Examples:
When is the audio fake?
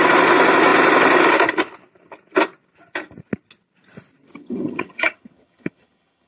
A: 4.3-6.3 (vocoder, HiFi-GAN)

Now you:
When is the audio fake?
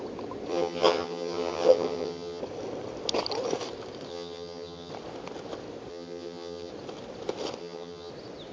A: 0.5-2.4 (vocoder, HiFi-GAN); 4.1-4.9; 5.9-6.7; 7.6-8.1